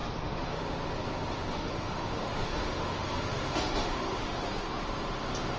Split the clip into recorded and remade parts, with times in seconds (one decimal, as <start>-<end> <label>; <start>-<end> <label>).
0.0-0.6 remade; 0.6-1.5 recorded; 1.5-4.9 remade; 4.9-5.6 recorded